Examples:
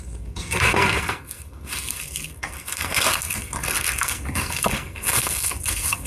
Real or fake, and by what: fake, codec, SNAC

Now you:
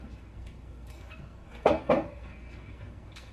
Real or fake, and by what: fake, codec, SNAC